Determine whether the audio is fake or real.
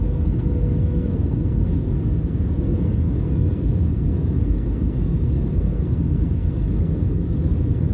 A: fake